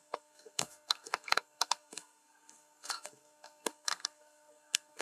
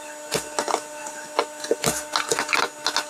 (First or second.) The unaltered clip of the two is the second